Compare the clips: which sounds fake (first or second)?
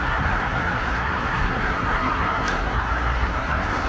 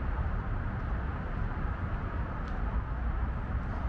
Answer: first